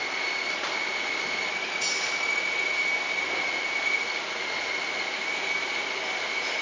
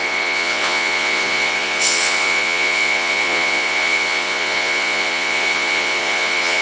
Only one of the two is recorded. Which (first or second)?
first